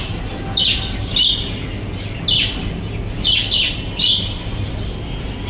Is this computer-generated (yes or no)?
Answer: no